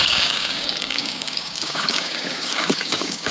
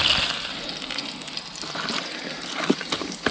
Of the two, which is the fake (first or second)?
first